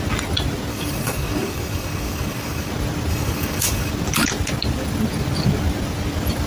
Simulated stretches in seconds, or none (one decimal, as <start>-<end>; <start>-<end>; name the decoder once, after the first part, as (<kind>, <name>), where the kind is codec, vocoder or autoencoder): 0.7-2.7 (codec, DAC); 3.1-3.9